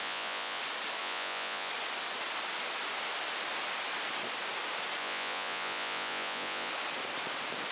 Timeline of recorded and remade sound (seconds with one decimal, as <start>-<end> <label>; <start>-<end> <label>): 0.0-0.6 remade; 0.6-1.0 recorded; 1.0-1.7 remade; 1.7-5.0 recorded; 5.0-6.7 remade; 6.7-7.7 recorded